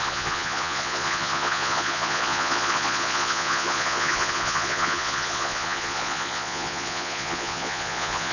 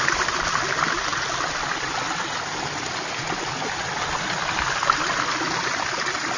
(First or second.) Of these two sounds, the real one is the second